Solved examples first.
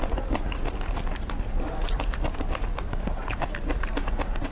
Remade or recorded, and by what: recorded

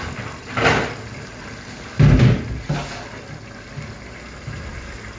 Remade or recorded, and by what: recorded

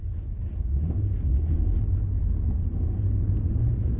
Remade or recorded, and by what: recorded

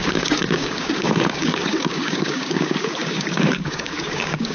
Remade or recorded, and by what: remade, codec, DAC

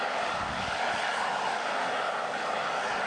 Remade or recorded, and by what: remade, codec, DAC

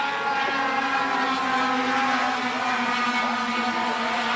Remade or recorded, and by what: recorded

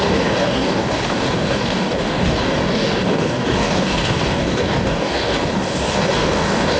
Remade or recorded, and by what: remade, codec, DAC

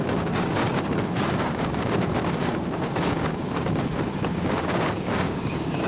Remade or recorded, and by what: remade, codec, DAC